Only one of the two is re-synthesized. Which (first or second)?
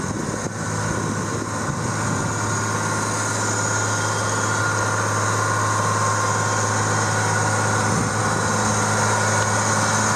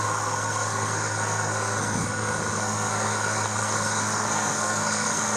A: second